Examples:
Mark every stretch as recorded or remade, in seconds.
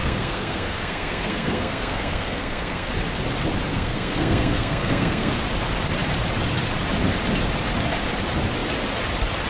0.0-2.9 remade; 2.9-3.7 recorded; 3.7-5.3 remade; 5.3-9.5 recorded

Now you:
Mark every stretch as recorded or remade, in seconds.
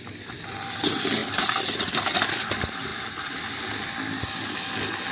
0.0-5.1 recorded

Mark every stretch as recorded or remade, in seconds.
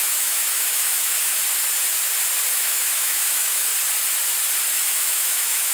0.0-1.4 remade; 1.4-2.5 recorded; 2.5-3.7 remade; 3.7-4.7 recorded; 4.7-5.7 remade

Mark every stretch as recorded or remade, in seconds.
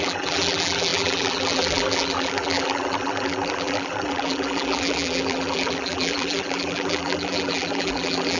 0.0-8.4 remade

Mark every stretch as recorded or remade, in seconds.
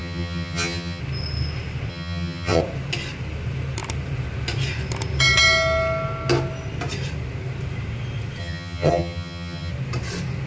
0.0-1.0 remade; 1.0-1.9 recorded; 1.9-2.6 remade; 2.6-8.4 recorded; 8.4-9.7 remade; 9.7-10.5 recorded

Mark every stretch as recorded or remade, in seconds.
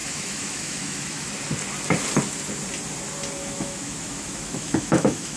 0.0-1.3 remade; 1.3-3.4 recorded; 3.4-5.4 remade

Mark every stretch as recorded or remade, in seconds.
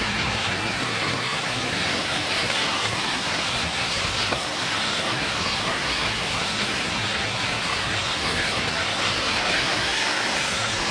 0.0-10.9 remade